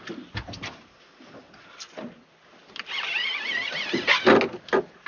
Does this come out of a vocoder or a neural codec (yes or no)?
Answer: no